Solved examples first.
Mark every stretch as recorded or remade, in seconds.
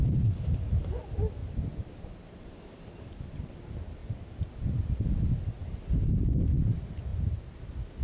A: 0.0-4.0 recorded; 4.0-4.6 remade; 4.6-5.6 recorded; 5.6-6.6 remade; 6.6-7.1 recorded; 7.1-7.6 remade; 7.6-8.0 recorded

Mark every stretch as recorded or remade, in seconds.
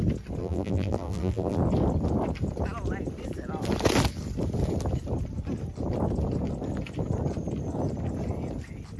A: 0.0-0.4 recorded; 0.4-1.6 remade; 1.6-9.0 recorded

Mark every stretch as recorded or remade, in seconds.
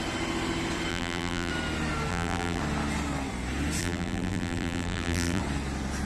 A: 0.0-0.9 recorded; 0.9-1.5 remade; 1.5-2.1 recorded; 2.1-2.6 remade; 2.6-3.8 recorded; 3.8-5.4 remade; 5.4-6.0 recorded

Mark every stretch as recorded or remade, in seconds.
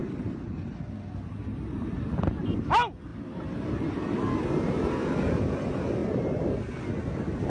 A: 0.0-3.1 recorded; 3.1-3.9 remade; 3.9-7.5 recorded